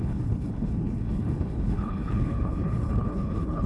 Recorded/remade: remade